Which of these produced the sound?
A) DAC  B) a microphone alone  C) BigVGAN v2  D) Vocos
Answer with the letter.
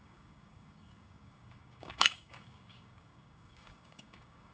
A